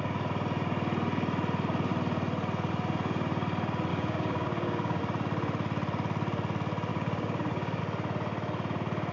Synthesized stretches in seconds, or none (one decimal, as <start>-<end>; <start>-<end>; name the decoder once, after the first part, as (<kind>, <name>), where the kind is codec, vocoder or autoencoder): 3.9-5.0 (codec, DAC); 6.9-7.8